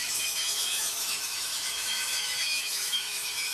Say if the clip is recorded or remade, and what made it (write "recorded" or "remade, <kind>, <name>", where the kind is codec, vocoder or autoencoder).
remade, autoencoder, DAC-VAE